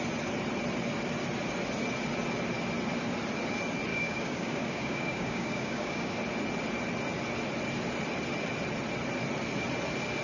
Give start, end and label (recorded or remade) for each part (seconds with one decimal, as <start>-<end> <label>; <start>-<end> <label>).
0.0-3.9 recorded; 3.9-6.1 remade; 6.1-10.2 recorded